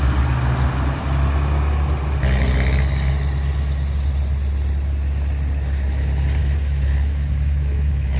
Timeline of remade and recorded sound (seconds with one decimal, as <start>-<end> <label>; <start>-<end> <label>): 0.0-6.4 recorded; 6.4-8.2 remade